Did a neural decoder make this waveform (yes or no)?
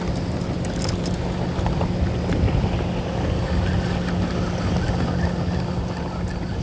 no